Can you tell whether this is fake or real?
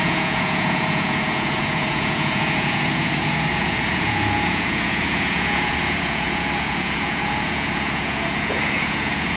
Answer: fake